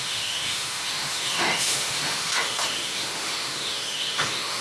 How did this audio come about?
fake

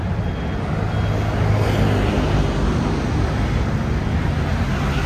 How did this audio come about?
real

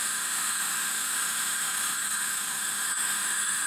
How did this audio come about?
fake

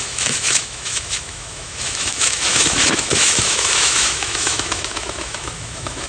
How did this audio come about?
fake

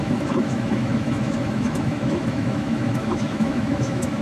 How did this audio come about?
fake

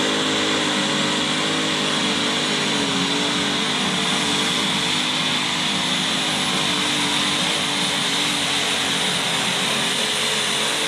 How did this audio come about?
real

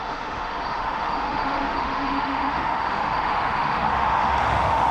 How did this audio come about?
fake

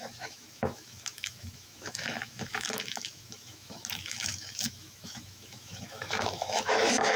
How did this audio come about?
fake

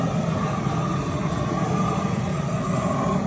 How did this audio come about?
real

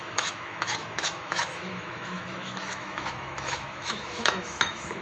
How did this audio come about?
fake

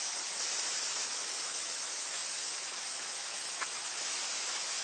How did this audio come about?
fake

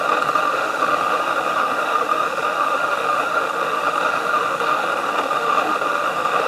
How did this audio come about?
fake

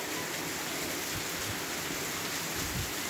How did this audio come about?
real